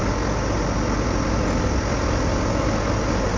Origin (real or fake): real